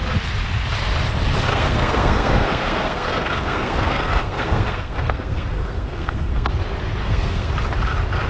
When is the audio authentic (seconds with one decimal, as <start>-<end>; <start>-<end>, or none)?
0.0-1.5; 6.5-7.0; 7.5-8.3